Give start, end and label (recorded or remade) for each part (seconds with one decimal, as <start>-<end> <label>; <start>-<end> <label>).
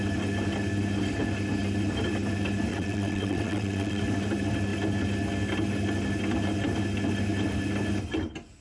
0.0-2.7 recorded; 2.7-4.0 remade; 4.0-8.6 recorded